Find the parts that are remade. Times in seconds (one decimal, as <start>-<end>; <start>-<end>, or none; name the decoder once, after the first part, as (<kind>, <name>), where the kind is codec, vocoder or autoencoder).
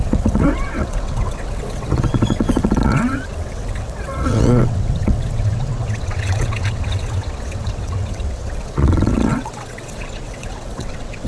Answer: 0.0-11.3 (vocoder, WaveNeXt)